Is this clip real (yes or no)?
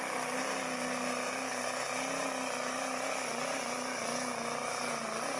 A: yes